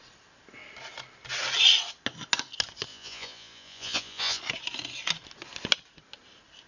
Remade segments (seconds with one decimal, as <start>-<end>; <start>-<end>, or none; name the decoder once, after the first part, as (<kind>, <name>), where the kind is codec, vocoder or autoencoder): 2.9-4.4 (vocoder, Vocos)